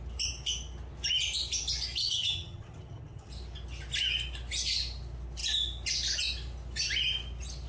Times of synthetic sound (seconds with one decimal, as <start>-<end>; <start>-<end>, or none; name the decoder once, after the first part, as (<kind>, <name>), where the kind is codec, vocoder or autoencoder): 2.0-3.3 (vocoder, HiFi-GAN)